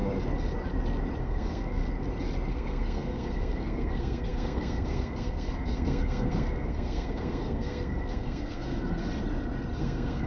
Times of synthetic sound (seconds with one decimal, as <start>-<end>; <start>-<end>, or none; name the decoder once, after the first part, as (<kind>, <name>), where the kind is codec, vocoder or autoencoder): 1.2-1.8 (codec, SNAC); 2.5-9.0; 9.8-10.3

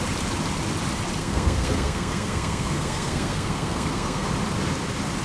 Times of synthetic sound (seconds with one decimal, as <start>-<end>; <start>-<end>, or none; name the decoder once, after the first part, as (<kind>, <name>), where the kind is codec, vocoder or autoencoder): 1.2-4.3 (codec, SNAC)